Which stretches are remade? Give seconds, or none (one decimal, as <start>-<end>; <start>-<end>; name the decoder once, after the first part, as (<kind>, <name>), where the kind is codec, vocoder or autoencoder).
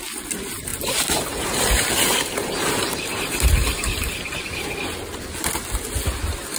0.7-4.7 (vocoder, BigVGAN v2)